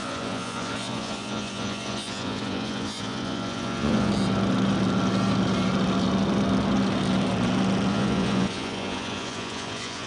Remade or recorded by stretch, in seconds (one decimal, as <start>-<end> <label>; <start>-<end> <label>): 0.0-4.1 remade; 4.1-7.9 recorded; 7.9-10.1 remade